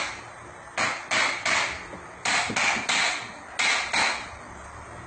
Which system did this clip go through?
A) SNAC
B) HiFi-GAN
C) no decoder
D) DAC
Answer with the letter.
C